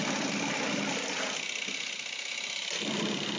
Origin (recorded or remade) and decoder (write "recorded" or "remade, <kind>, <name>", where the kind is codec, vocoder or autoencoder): recorded